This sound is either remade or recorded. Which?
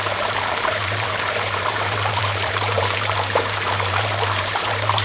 remade